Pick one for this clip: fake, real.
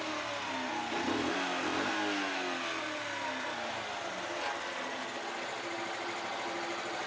real